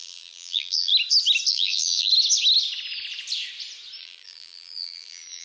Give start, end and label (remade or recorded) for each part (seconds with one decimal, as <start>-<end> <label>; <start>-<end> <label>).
0.0-0.9 remade; 0.9-1.5 recorded; 1.5-2.1 remade; 2.1-4.0 recorded; 4.0-5.4 remade